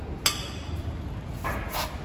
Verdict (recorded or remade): recorded